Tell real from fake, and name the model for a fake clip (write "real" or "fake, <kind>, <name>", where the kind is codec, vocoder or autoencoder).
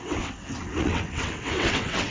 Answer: fake, vocoder, WaveNeXt